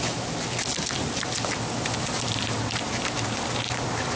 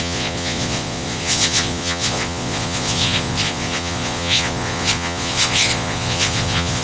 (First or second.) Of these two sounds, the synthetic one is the second